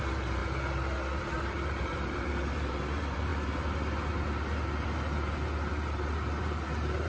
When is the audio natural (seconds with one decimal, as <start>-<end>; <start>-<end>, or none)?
0.4-1.2; 3.3-6.4